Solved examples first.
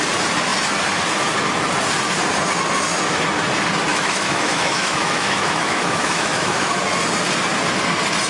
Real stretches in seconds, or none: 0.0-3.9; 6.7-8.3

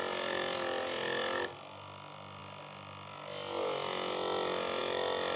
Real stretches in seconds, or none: 0.0-5.4

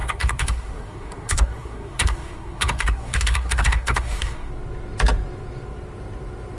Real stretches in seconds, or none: 4.5-6.6

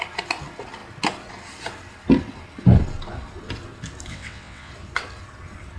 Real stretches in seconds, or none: 0.0-4.1; 4.7-5.8